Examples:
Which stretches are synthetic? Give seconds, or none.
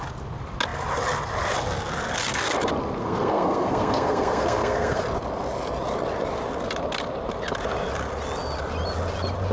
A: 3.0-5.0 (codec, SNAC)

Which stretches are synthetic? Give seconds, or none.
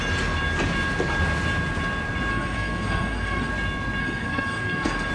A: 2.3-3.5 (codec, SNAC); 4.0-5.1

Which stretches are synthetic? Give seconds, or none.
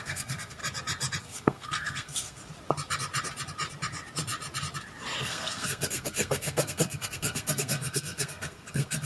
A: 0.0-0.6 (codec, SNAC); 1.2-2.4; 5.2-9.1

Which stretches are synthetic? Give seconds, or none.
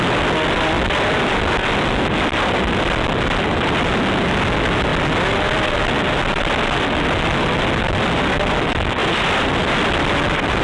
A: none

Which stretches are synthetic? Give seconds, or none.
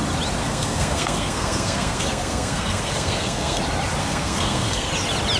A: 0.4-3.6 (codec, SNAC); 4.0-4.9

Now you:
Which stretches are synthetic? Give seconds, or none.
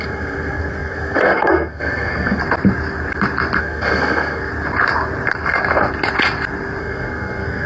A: 0.0-2.4 (codec, SNAC); 3.6-4.5; 6.8-7.7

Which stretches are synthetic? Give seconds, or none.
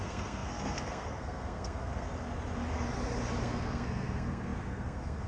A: 0.0-2.1 (codec, SNAC); 3.4-5.3